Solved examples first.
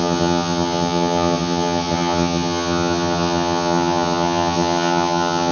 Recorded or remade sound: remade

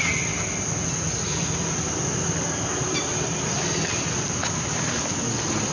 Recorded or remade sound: recorded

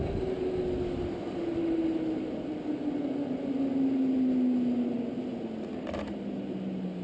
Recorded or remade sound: recorded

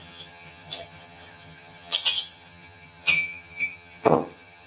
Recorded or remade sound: remade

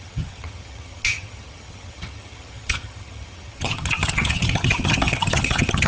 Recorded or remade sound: remade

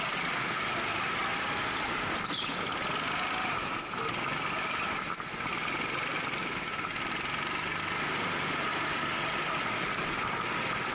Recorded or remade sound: recorded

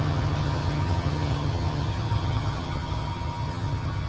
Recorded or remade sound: remade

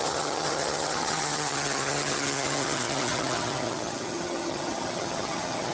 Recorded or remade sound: remade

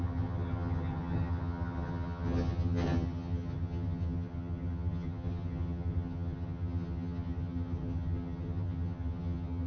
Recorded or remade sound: remade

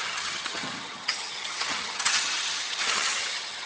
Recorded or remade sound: remade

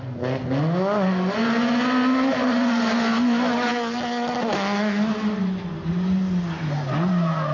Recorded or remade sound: recorded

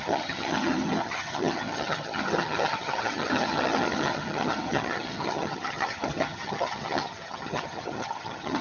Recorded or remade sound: remade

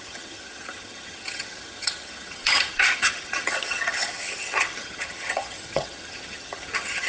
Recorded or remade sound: remade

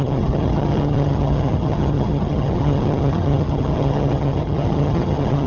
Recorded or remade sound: remade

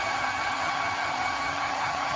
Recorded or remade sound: remade